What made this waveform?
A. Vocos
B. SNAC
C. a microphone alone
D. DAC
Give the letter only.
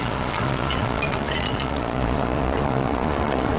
A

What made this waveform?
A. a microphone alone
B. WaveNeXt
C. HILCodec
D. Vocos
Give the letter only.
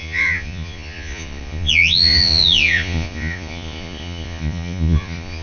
D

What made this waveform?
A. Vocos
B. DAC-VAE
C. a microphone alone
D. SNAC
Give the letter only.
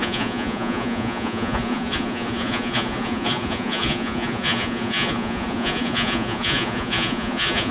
A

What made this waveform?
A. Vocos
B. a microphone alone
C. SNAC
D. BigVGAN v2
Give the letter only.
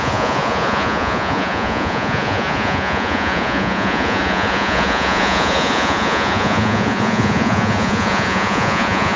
A